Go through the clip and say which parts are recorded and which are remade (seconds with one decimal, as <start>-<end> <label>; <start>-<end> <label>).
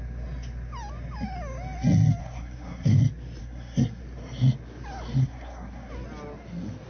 0.0-2.2 recorded; 2.2-3.0 remade; 3.0-3.4 recorded; 3.4-4.0 remade; 4.0-5.2 recorded; 5.2-5.9 remade; 5.9-6.9 recorded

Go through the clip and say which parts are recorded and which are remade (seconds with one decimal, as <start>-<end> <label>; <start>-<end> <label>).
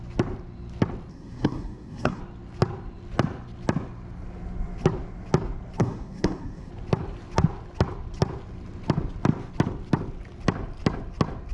0.0-1.1 recorded; 1.1-2.2 remade; 2.2-5.8 recorded; 5.8-6.7 remade; 6.7-11.5 recorded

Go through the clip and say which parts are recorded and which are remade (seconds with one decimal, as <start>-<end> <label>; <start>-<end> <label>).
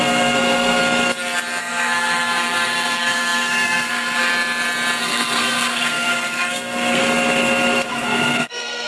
0.0-0.8 remade; 0.8-1.6 recorded; 1.6-4.3 remade; 4.3-5.0 recorded; 5.0-7.0 remade; 7.0-7.9 recorded; 7.9-8.9 remade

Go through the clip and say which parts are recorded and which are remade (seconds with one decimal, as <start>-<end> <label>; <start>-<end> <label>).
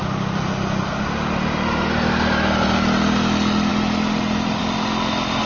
0.0-5.5 recorded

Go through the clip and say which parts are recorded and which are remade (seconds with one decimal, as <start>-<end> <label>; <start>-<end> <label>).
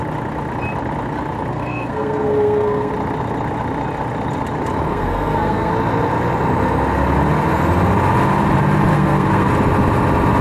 0.0-1.5 recorded; 1.5-2.9 remade; 2.9-4.9 recorded; 4.9-5.7 remade; 5.7-8.9 recorded; 8.9-9.5 remade; 9.5-10.4 recorded